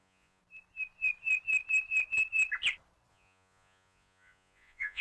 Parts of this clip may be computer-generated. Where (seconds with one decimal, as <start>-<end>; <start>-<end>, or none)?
0.0-0.4; 3.1-5.0